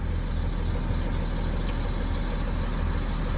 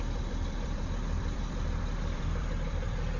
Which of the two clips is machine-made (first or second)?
second